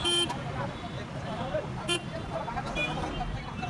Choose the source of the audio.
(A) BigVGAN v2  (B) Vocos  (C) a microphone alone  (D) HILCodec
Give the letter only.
C